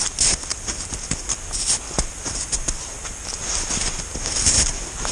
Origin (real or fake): real